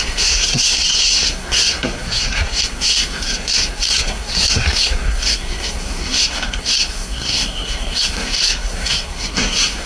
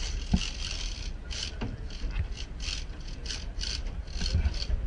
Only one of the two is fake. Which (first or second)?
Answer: first